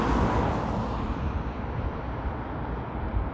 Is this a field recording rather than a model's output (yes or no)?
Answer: yes